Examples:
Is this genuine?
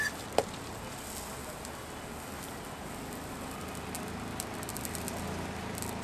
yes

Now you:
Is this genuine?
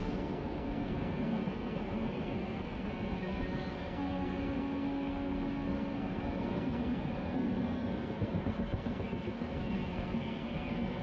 no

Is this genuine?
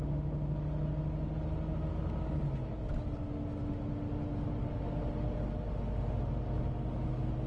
yes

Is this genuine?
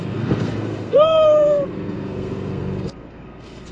no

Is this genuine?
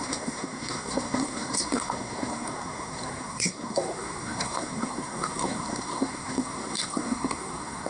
no